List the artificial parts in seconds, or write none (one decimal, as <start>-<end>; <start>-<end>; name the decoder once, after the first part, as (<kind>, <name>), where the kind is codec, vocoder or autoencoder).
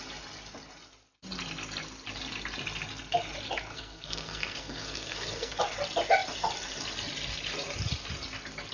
3.7-5.6 (codec, SNAC)